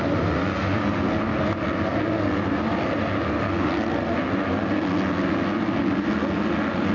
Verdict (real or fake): real